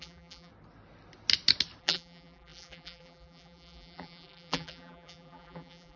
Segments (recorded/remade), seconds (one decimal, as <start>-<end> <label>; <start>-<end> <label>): 0.0-0.5 remade; 0.5-1.8 recorded; 1.8-6.0 remade